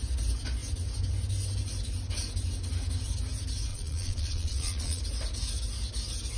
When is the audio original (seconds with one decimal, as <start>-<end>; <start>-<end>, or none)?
0.0-3.7; 5.0-6.4